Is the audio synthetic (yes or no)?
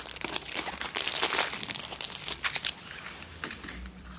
yes